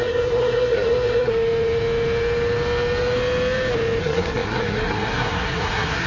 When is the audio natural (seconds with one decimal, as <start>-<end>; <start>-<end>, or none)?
1.3-4.0